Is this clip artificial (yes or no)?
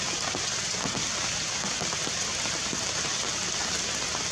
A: no